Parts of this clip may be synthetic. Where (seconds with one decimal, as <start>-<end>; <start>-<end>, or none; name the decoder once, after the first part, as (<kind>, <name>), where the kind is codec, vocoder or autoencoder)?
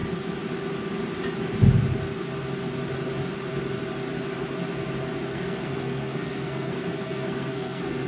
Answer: 5.3-8.1 (codec, SNAC)